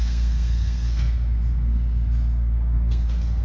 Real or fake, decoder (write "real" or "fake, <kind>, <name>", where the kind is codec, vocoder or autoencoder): fake, codec, SNAC